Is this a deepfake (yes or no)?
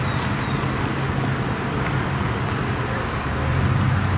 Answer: no